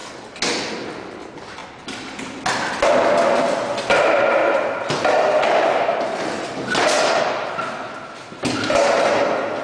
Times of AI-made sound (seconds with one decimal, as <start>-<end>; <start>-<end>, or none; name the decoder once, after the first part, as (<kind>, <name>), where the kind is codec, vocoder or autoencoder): none